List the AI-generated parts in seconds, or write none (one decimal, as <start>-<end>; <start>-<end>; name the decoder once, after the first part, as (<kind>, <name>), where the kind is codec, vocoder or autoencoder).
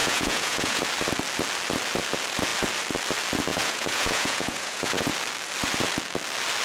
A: 0.0-0.8 (vocoder, Vocos); 3.5-5.1